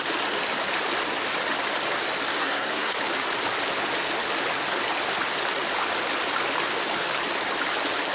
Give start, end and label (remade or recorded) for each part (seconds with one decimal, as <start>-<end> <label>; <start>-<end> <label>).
0.0-2.3 recorded; 2.3-2.9 remade; 2.9-8.1 recorded